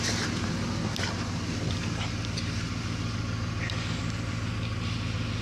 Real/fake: real